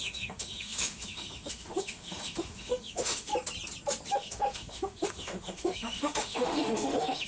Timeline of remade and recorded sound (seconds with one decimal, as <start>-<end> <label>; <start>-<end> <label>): 0.0-3.3 remade; 3.3-4.1 recorded; 4.1-7.3 remade